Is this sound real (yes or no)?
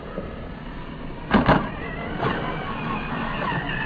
yes